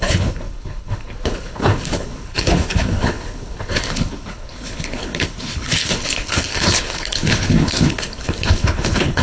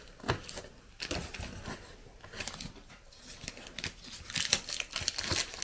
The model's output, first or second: first